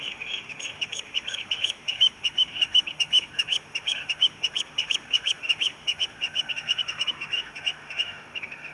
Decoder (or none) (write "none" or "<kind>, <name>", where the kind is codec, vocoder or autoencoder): autoencoder, DAC-VAE